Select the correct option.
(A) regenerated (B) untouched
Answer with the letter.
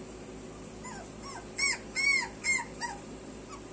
B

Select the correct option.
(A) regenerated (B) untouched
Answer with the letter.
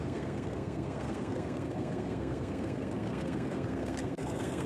A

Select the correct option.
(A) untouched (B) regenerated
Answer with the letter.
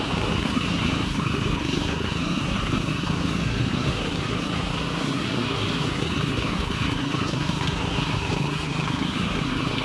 B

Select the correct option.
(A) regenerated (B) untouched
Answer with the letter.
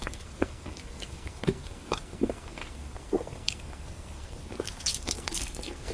A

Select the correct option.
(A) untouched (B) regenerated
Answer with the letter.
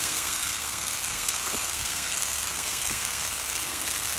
B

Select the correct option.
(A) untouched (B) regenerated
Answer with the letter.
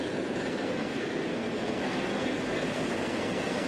B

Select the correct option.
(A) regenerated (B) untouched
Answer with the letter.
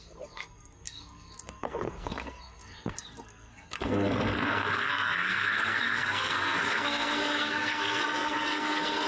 A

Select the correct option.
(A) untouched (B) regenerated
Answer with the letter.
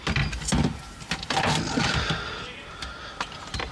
A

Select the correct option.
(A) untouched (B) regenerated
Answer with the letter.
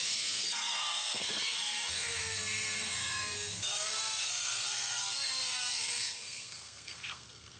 B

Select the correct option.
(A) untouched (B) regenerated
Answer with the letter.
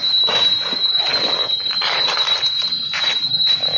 A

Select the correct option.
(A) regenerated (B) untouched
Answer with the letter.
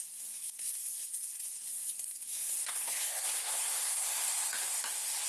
A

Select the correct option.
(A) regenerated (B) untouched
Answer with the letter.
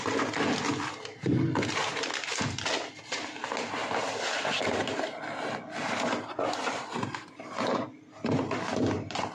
B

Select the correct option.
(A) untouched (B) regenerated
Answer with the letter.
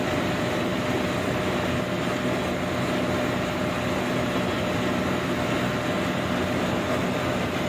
A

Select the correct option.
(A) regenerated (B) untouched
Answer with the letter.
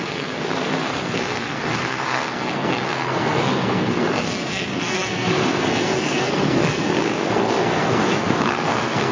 A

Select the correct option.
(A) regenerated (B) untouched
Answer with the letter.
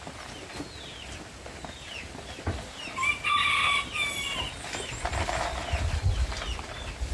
B